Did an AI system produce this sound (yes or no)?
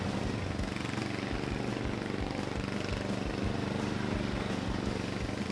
no